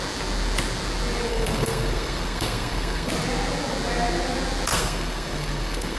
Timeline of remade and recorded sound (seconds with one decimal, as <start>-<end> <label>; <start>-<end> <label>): 0.0-1.3 recorded; 1.3-3.1 remade; 3.1-4.7 recorded; 4.7-6.0 remade